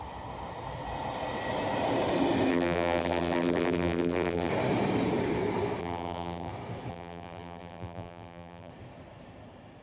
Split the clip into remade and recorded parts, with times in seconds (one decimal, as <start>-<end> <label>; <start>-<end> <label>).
0.0-2.5 recorded; 2.5-4.5 remade; 4.5-5.8 recorded; 5.8-6.5 remade; 6.5-6.9 recorded; 6.9-8.7 remade; 8.7-9.8 recorded